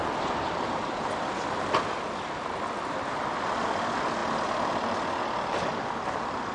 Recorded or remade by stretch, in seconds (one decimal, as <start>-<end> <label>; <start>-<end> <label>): 0.0-6.5 recorded